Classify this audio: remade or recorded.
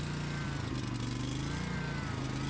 recorded